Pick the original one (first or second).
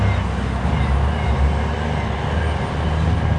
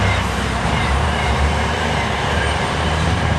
first